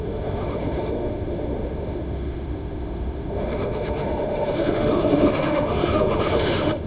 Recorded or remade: remade